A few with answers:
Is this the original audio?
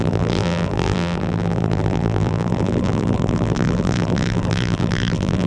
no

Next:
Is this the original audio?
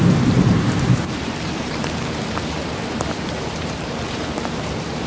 no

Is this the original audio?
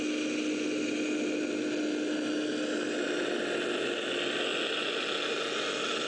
yes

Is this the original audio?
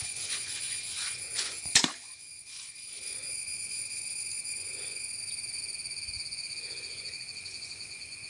no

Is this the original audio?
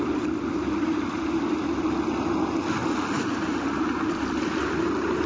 yes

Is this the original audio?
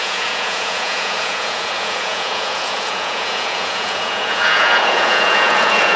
no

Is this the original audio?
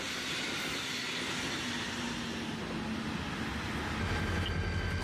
yes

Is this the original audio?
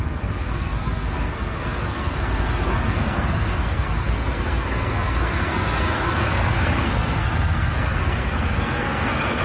no